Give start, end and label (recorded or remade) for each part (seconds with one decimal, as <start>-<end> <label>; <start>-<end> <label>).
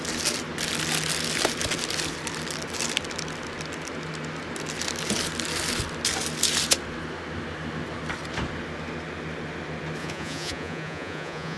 0.0-10.0 recorded; 10.0-11.6 remade